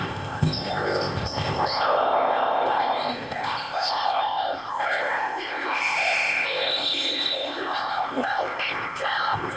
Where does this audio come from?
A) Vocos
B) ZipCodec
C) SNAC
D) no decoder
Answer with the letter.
B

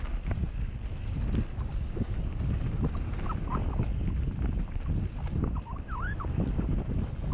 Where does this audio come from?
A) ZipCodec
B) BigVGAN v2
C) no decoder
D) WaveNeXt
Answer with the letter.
C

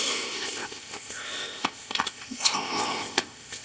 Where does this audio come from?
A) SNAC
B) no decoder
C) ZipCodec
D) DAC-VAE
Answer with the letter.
C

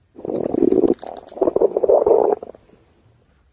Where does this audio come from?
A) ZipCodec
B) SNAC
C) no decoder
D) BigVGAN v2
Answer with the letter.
C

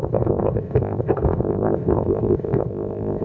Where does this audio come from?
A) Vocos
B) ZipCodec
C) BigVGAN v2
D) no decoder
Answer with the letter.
B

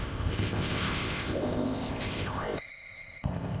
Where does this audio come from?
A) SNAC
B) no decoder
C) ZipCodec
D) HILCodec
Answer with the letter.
C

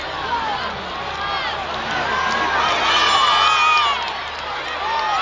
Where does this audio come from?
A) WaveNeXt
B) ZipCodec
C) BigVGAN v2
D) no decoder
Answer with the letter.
D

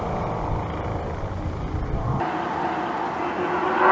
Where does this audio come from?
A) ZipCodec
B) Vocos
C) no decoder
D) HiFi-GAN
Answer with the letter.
C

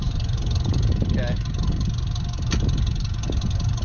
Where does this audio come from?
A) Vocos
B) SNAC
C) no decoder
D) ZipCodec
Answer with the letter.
C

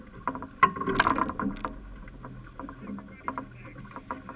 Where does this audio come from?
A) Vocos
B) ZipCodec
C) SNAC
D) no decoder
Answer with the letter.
D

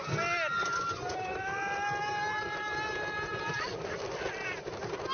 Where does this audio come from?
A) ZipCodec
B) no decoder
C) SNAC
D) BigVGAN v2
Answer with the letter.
B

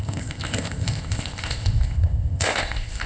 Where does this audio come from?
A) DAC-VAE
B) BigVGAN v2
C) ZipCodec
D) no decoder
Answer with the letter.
C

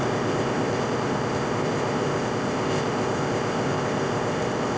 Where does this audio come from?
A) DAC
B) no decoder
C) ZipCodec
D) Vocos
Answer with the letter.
C